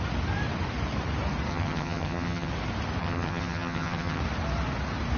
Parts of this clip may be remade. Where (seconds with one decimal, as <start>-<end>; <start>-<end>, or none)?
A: 1.5-2.5; 3.0-4.2